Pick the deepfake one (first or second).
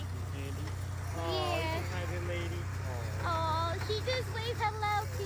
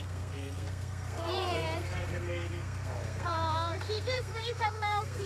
second